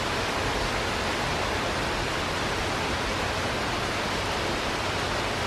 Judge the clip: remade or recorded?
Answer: recorded